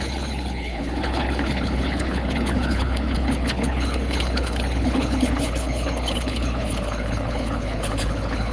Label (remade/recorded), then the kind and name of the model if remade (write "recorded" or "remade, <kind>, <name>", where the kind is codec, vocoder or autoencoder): remade, codec, HILCodec